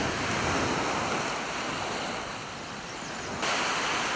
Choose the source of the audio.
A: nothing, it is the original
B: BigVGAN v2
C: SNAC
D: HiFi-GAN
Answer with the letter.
A